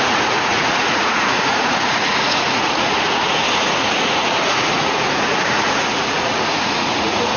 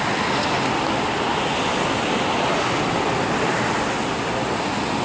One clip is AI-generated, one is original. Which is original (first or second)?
second